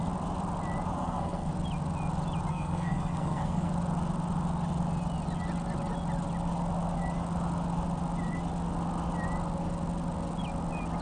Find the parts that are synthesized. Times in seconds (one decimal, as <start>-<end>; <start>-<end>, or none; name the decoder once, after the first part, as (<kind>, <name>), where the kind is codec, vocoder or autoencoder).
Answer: 1.0-1.5 (codec, SNAC); 2.5-3.7

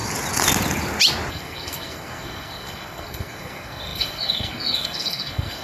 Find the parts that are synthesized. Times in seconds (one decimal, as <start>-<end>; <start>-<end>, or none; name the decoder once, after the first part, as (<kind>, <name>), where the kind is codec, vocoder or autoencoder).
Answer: 1.3-5.6 (codec, SNAC)

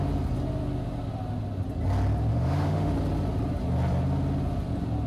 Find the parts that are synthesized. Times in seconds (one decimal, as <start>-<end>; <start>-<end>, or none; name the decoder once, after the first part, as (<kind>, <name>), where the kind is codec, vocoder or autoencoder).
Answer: 2.3-2.9 (autoencoder, DAC-VAE)

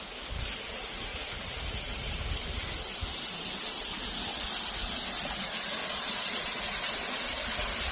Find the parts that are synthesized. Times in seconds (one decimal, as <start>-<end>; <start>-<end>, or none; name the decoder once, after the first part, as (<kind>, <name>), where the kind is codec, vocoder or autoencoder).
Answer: 5.8-6.5 (vocoder, Vocos)

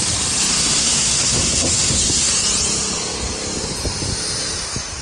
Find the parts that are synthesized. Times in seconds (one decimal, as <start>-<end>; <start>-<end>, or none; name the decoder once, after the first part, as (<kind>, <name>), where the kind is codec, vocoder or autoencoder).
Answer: 0.5-2.3 (codec, SNAC)